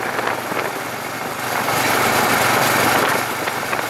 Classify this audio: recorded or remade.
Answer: recorded